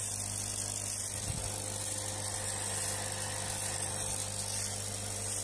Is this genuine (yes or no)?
yes